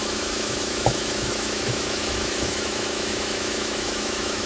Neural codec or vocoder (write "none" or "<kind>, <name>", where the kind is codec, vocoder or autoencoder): autoencoder, DAC-VAE